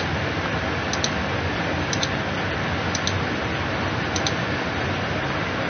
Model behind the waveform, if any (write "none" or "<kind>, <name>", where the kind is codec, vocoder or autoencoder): none